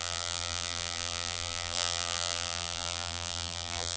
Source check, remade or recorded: remade